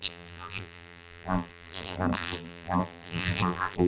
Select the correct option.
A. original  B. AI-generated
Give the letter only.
B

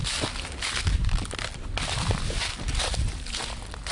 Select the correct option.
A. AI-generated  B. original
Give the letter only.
B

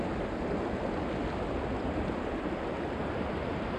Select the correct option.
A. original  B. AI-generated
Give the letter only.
B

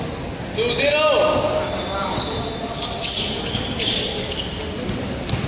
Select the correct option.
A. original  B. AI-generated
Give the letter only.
A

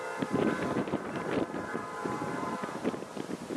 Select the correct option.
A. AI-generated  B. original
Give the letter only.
A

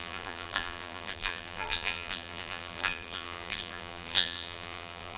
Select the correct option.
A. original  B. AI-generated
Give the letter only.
B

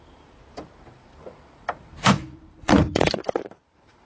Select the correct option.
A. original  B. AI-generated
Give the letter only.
B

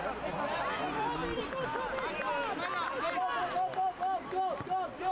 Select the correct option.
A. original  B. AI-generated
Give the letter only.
A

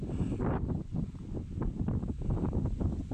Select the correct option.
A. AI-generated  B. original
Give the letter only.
B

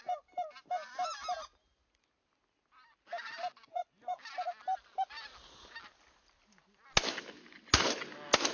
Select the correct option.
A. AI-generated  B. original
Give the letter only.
B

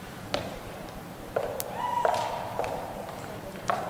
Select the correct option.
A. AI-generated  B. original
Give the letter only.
A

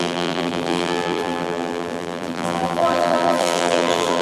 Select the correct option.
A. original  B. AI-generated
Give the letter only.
B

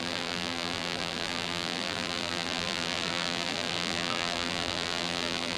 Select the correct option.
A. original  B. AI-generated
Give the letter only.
B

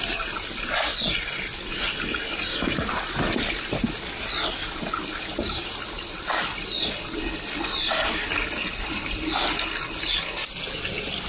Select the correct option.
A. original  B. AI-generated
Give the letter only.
A